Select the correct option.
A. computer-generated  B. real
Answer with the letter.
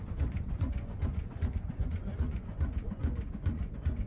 A